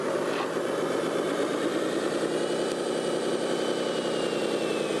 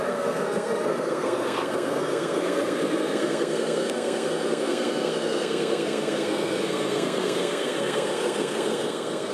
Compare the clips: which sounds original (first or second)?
first